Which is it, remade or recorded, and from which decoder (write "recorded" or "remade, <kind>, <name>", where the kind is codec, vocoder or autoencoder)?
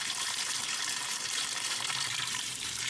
remade, vocoder, BigVGAN v2